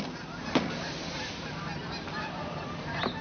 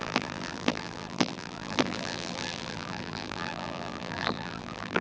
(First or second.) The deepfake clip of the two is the second